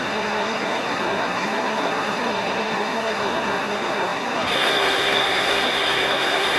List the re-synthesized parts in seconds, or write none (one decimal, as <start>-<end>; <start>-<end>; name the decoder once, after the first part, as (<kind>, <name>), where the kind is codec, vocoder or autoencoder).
0.0-6.6 (codec, SNAC)